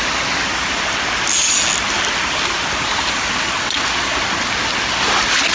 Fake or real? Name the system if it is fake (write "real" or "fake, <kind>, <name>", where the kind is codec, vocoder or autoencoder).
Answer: real